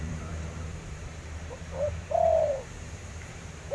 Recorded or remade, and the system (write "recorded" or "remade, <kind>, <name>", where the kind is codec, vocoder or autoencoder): remade, vocoder, BigVGAN v2